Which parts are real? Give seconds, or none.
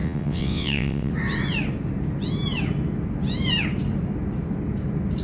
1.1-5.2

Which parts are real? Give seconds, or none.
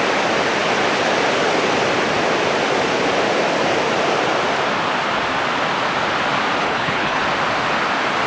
0.0-6.6; 7.2-8.3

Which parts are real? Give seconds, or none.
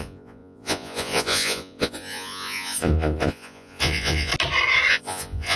4.3-4.9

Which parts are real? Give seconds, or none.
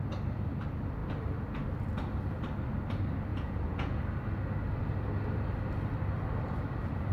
0.0-3.3; 4.0-7.1